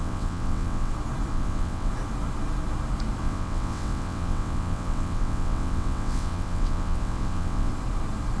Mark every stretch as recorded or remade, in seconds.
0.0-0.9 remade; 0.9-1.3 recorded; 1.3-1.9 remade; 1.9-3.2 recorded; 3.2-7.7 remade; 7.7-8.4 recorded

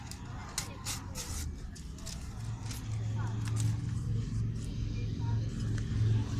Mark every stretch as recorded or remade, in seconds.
0.0-6.4 recorded

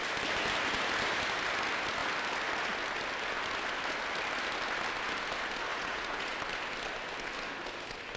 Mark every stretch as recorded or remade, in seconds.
0.0-5.7 recorded; 5.7-6.4 remade; 6.4-8.2 recorded

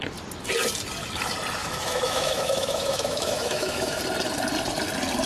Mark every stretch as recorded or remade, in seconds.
0.0-1.6 recorded; 1.6-4.0 remade; 4.0-5.3 recorded